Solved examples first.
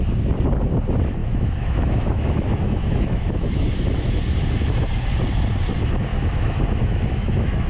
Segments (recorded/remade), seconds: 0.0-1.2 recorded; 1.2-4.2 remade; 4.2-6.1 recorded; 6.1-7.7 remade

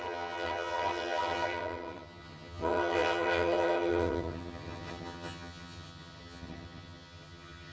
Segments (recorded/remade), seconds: 0.0-7.7 remade

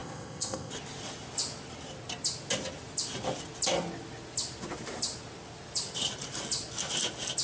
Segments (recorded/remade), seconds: 0.0-0.7 remade; 0.7-7.4 recorded